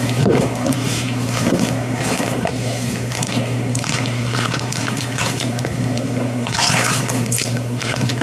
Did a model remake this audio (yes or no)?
yes